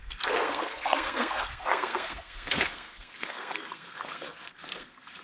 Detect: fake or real fake